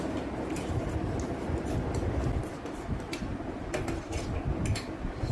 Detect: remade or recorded recorded